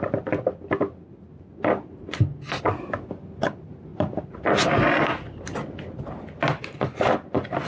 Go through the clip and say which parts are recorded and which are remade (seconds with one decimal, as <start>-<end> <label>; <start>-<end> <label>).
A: 0.0-7.7 recorded

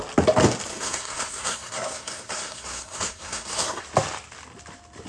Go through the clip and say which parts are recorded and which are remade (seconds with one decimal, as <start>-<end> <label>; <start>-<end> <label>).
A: 0.0-0.7 recorded; 0.7-3.8 remade; 3.8-5.1 recorded

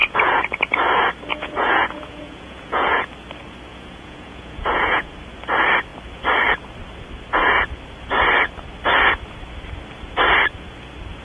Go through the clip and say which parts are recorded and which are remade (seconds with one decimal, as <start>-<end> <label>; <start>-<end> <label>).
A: 0.0-0.6 remade; 0.6-1.3 recorded; 1.3-3.1 remade; 3.1-3.7 recorded; 3.7-5.1 remade; 5.1-11.2 recorded

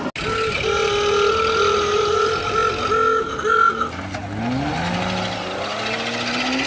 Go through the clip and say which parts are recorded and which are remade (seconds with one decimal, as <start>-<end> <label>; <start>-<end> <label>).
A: 0.0-6.7 recorded

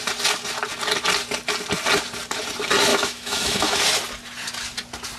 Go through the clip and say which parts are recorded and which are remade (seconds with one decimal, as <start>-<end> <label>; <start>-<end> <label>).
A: 0.0-2.9 recorded; 2.9-3.8 remade; 3.8-5.2 recorded

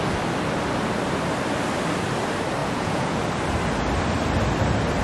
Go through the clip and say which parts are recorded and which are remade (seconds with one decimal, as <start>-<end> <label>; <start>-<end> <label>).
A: 0.0-2.6 recorded; 2.6-3.2 remade; 3.2-5.0 recorded

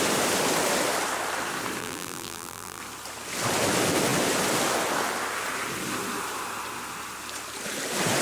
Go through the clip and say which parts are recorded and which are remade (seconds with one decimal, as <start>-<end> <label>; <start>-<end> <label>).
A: 0.0-1.8 recorded; 1.8-2.8 remade; 2.8-8.2 recorded